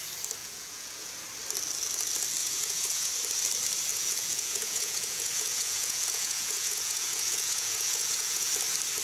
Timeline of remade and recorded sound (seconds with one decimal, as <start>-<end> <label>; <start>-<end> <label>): 0.0-0.4 recorded; 0.4-1.1 remade; 1.1-2.4 recorded; 2.4-3.1 remade; 3.1-3.9 recorded; 3.9-8.5 remade; 8.5-9.0 recorded